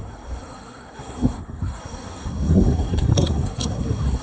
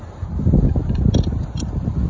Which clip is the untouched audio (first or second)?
second